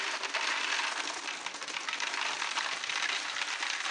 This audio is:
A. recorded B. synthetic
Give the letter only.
A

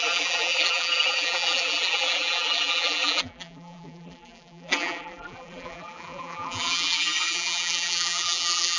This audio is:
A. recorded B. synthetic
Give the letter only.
B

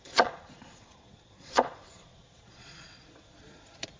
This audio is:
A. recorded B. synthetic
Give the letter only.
B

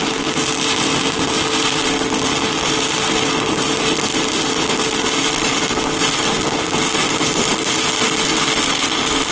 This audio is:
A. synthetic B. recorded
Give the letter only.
B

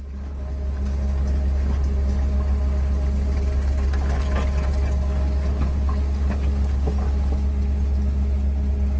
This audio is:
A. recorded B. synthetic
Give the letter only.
A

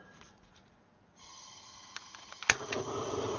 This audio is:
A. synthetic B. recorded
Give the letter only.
A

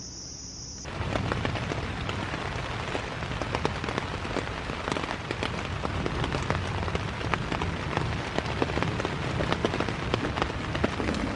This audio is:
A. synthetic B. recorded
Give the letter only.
B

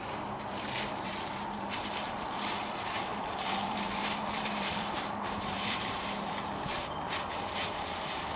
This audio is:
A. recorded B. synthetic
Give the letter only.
B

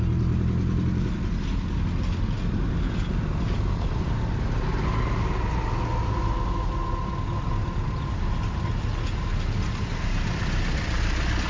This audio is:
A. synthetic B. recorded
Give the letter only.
B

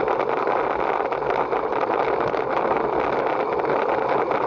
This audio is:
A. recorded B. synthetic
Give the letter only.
A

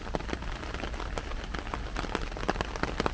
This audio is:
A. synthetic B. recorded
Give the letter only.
B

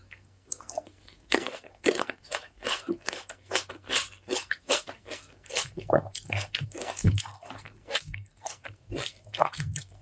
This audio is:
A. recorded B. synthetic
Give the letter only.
B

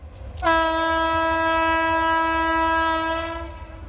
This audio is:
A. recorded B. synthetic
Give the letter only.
A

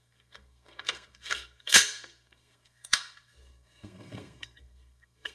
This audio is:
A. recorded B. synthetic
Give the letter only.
B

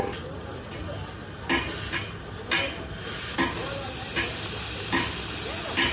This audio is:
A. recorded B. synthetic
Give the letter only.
A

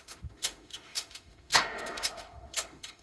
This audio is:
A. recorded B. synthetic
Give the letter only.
B